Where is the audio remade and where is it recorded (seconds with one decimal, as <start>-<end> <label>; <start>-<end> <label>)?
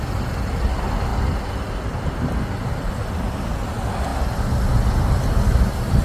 0.0-6.0 recorded